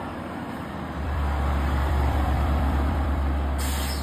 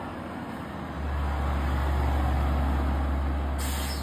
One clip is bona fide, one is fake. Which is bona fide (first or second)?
second